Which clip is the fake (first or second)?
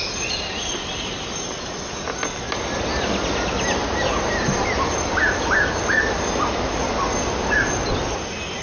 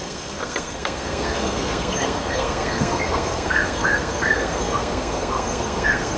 second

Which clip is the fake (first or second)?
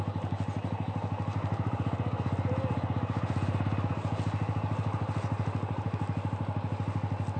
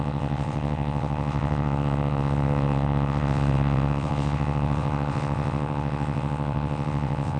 second